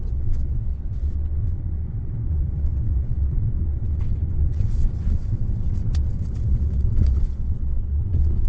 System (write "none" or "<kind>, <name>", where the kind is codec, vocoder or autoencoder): vocoder, WaveNeXt